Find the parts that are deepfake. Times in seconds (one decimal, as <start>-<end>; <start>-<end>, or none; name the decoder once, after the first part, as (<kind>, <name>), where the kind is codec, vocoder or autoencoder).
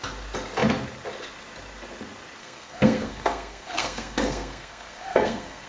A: 2.4-5.7 (codec, SNAC)